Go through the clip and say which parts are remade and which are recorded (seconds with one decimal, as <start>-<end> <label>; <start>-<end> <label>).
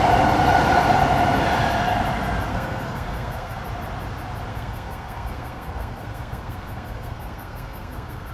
0.0-2.5 recorded; 2.5-3.6 remade; 3.6-4.5 recorded; 4.5-8.3 remade